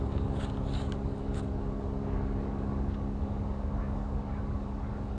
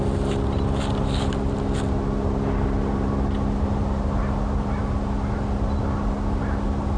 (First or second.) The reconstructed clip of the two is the first